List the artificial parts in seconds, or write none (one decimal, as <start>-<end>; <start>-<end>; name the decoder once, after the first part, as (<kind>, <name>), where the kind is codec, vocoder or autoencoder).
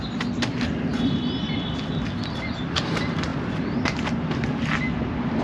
0.9-1.6 (vocoder, BigVGAN v2); 3.3-4.8